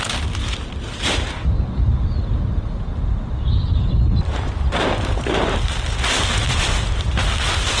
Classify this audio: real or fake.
real